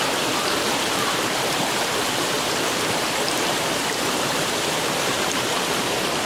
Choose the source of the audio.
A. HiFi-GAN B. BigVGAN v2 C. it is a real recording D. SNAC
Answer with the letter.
B